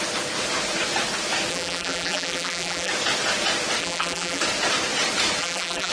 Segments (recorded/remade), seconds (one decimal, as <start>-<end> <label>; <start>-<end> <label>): 0.0-1.5 recorded; 1.5-2.9 remade; 2.9-3.8 recorded; 3.8-4.4 remade; 4.4-5.4 recorded; 5.4-5.9 remade